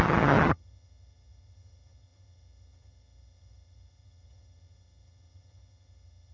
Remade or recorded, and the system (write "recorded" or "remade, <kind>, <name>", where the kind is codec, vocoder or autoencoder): remade, vocoder, HiFi-GAN